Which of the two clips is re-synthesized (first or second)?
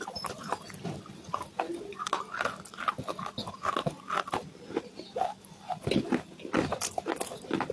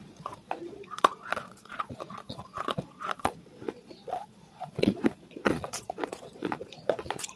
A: second